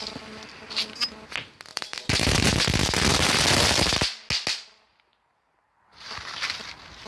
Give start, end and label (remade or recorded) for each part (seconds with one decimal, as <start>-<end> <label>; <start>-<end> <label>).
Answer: 0.0-1.7 recorded; 1.7-2.5 remade; 2.5-5.1 recorded; 5.1-6.6 remade; 6.6-7.1 recorded